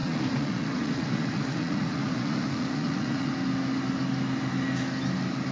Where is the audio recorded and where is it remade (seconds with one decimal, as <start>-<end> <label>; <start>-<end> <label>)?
0.0-3.3 remade; 3.3-5.5 recorded